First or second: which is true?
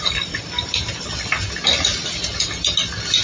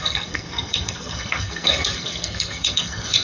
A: first